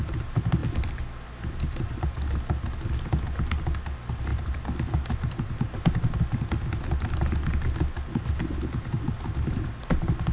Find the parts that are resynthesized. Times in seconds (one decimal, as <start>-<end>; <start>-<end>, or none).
none